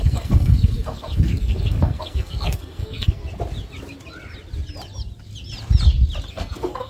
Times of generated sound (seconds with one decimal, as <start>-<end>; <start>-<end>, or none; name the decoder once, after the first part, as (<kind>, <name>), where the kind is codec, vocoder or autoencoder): 0.0-3.2 (codec, SNAC); 6.3-6.9